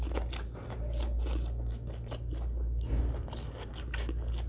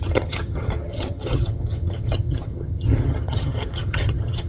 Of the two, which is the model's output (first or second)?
second